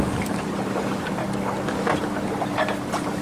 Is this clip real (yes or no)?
yes